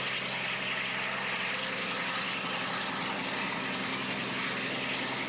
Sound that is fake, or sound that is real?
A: real